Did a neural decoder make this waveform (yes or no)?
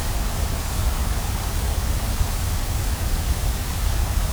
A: yes